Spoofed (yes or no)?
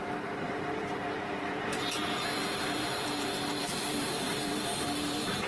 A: yes